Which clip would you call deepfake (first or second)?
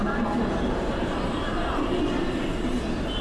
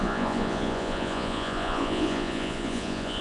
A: second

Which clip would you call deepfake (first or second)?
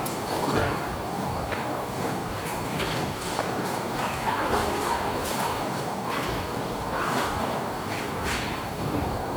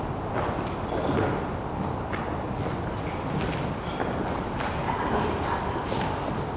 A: first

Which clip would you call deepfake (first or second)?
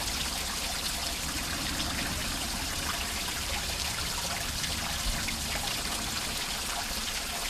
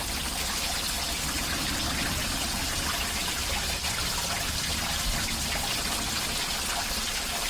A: first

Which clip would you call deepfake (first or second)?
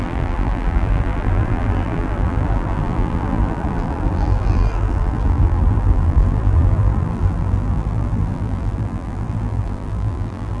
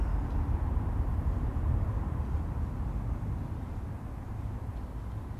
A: first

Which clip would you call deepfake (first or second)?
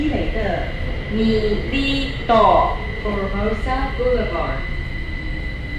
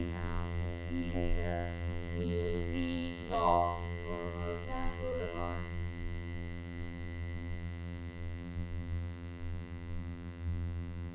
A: second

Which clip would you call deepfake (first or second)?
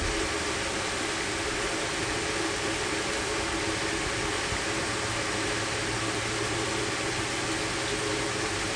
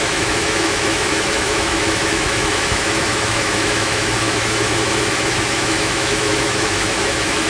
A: second